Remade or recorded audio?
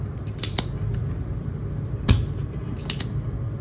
recorded